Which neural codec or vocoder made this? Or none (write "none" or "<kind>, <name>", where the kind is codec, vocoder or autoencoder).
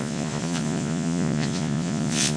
vocoder, Vocos